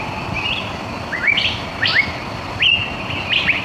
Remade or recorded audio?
recorded